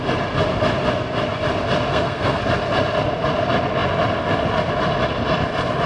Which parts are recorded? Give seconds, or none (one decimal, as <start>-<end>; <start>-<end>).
0.0-1.9; 2.4-5.9